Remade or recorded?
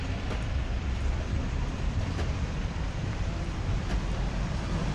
remade